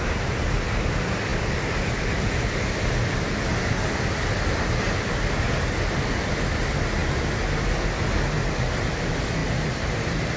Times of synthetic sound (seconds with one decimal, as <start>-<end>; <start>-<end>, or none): 9.4-10.4